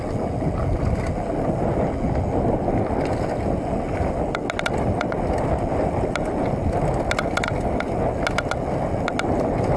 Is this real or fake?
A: real